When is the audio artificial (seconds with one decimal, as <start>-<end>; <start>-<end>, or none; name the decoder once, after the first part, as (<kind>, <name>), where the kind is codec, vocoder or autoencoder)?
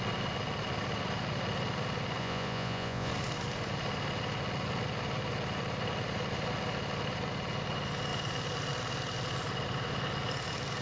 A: 2.2-3.1 (vocoder, Vocos)